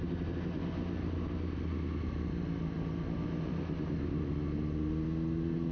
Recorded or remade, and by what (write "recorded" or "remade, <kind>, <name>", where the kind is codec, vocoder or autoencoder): recorded